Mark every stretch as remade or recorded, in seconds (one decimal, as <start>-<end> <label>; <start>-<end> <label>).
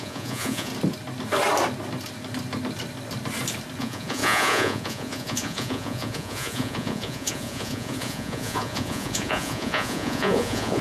0.0-0.7 remade; 0.7-3.8 recorded; 3.8-10.8 remade